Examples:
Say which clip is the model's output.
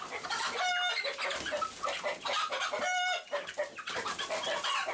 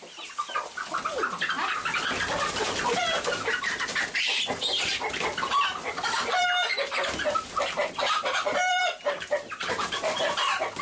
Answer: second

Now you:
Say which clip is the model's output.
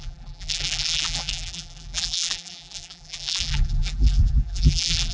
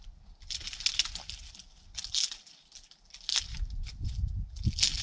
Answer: first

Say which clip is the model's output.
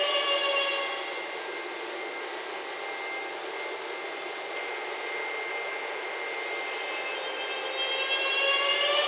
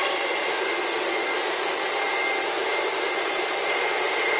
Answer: second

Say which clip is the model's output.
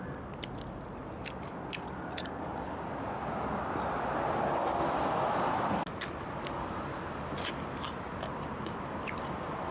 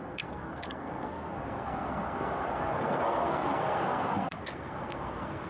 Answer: second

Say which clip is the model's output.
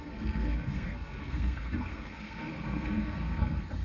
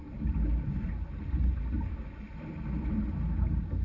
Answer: first